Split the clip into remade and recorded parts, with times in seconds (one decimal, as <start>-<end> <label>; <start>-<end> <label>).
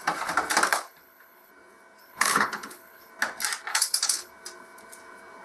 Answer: 0.0-0.7 recorded; 0.7-1.5 remade; 1.5-2.0 recorded; 2.0-3.1 remade; 3.1-3.7 recorded; 3.7-4.3 remade; 4.3-5.4 recorded